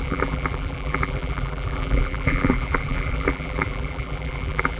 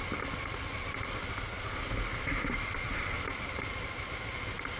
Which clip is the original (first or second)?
second